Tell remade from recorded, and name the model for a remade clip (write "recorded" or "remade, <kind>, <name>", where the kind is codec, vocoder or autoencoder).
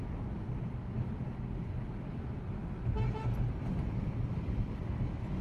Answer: recorded